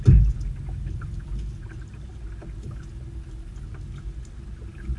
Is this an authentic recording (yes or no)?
yes